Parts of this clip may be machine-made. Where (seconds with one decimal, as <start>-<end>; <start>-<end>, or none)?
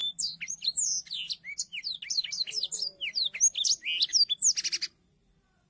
none